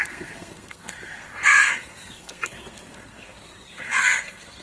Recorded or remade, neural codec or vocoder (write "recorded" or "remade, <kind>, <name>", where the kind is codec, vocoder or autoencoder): remade, codec, SNAC